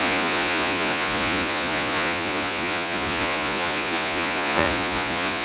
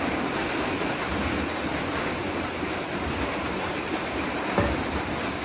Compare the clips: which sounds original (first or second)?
second